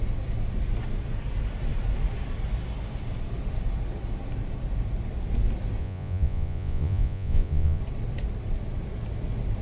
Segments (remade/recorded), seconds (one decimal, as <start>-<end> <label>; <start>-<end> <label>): 0.0-5.8 recorded; 5.8-7.8 remade; 7.8-9.6 recorded